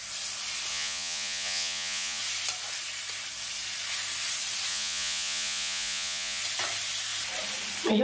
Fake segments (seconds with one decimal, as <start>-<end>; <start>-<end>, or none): 0.7-2.2; 4.7-6.4